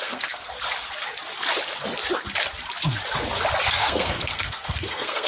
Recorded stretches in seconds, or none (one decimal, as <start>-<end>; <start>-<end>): 0.5-3.7